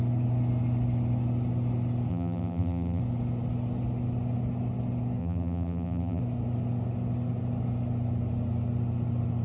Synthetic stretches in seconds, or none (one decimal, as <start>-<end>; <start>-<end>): 2.1-3.0; 5.2-6.2